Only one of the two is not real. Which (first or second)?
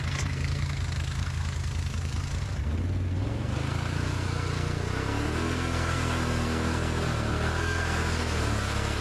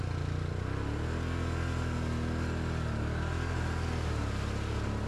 first